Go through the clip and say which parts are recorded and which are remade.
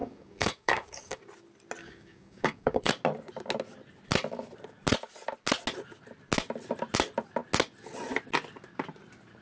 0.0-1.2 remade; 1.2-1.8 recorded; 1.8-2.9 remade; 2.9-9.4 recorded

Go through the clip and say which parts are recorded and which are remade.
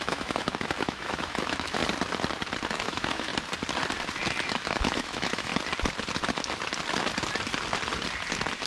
0.0-1.8 remade; 1.8-2.7 recorded; 2.7-3.3 remade; 3.3-4.5 recorded; 4.5-5.5 remade; 5.5-8.7 recorded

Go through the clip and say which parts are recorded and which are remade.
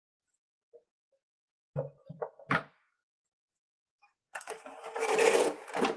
0.0-3.5 recorded; 3.5-4.6 remade; 4.6-6.0 recorded